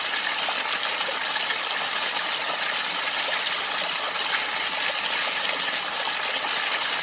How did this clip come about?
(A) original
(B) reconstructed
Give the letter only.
A